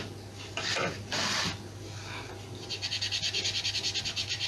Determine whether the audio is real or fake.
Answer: real